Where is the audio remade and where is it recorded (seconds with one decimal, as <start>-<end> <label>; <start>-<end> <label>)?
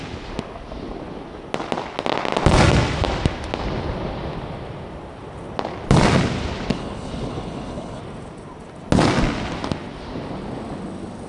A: 0.0-6.7 recorded; 6.7-8.0 remade; 8.0-11.3 recorded